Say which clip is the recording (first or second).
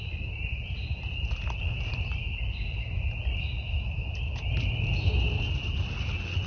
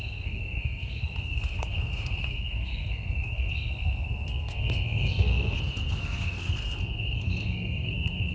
first